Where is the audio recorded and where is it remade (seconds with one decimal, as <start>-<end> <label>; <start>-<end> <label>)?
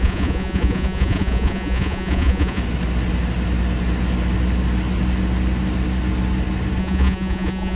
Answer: 0.0-2.6 remade; 2.6-6.8 recorded; 6.8-7.8 remade